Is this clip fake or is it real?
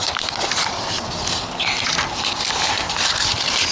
real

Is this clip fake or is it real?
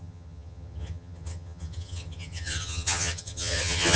fake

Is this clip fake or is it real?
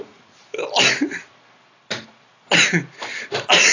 real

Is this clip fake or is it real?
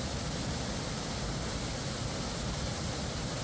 real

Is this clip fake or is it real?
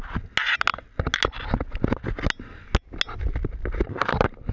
real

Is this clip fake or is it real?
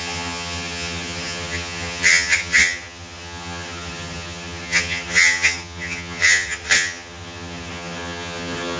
fake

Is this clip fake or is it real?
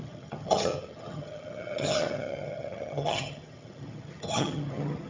fake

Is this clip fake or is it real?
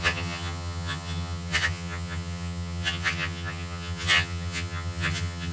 fake